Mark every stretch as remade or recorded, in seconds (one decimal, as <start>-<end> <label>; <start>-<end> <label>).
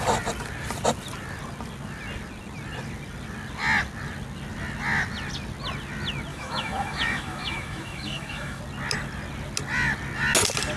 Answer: 0.0-6.3 recorded; 6.3-8.6 remade; 8.6-10.8 recorded